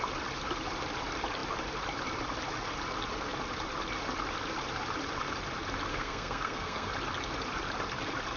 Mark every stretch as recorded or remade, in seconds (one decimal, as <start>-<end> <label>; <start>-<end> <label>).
0.0-5.9 recorded; 5.9-6.9 remade; 6.9-8.4 recorded